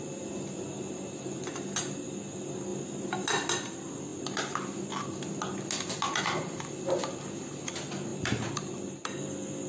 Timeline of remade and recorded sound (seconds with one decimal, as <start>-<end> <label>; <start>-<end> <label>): 0.0-8.1 recorded; 8.1-9.7 remade